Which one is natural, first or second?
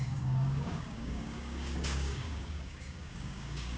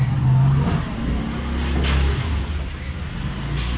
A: second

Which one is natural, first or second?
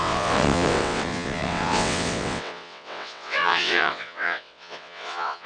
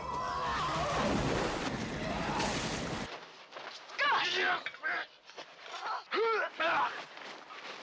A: second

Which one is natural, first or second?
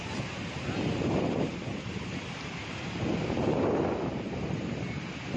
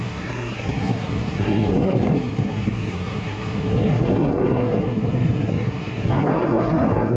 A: first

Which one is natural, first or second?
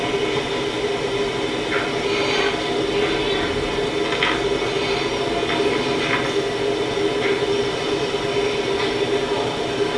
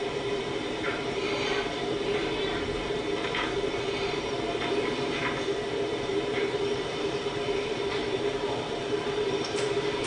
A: first